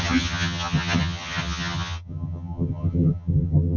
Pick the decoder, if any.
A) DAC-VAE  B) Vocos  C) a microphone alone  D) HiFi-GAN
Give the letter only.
D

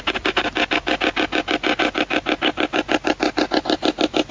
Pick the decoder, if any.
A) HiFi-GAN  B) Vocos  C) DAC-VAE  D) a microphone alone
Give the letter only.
D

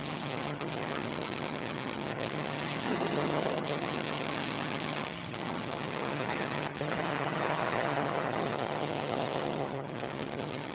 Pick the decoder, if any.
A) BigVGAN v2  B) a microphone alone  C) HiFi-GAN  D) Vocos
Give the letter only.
C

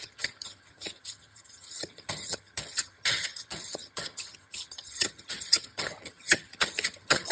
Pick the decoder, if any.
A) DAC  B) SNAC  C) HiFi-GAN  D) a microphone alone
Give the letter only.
C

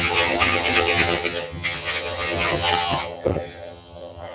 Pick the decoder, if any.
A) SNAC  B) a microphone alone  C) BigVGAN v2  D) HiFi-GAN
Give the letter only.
D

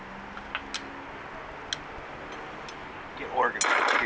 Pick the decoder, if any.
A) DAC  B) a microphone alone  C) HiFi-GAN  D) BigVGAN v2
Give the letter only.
B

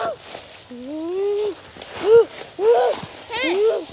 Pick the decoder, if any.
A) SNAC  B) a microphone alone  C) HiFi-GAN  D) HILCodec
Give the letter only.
B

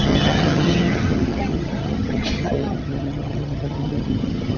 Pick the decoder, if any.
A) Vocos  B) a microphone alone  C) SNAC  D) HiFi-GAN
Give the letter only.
D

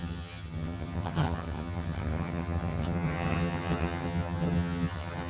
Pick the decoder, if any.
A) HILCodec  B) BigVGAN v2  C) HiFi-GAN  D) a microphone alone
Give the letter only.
C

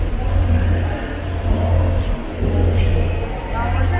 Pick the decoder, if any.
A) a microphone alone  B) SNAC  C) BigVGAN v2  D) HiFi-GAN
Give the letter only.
A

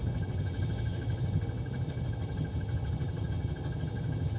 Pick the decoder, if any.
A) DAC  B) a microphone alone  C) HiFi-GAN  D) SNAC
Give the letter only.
C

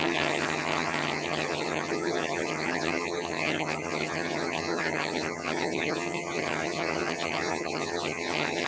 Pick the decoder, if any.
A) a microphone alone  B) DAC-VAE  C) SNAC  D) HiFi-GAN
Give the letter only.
D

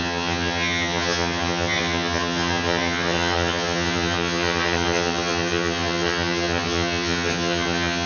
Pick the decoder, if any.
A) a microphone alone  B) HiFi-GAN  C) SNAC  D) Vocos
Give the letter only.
B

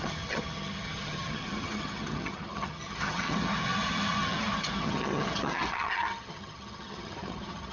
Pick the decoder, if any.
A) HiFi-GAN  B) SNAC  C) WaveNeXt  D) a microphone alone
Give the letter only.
A